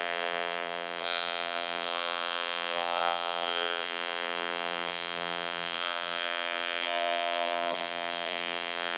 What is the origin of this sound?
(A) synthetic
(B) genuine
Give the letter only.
A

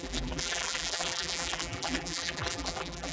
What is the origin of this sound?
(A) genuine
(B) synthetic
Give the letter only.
B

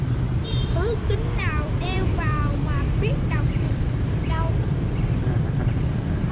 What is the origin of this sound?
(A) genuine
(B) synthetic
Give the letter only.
B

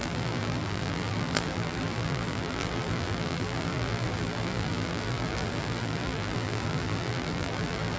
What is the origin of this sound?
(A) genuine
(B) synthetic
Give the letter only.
B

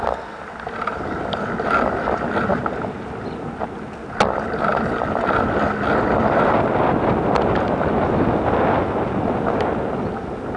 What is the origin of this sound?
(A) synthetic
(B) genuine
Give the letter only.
B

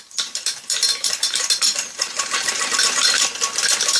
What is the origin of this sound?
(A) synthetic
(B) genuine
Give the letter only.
A